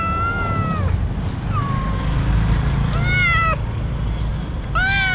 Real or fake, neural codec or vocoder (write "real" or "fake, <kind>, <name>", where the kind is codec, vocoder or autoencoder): real